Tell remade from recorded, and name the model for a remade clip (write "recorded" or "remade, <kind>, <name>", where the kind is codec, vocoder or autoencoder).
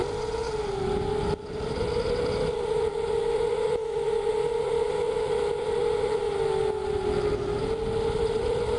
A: recorded